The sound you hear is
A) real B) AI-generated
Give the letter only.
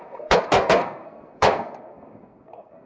B